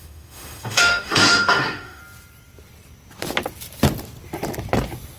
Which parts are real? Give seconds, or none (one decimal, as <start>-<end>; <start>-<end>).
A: 2.0-5.2